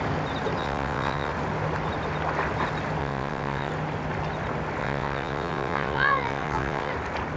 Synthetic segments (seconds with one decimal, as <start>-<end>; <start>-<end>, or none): 0.6-1.3; 3.0-3.7; 4.8-6.9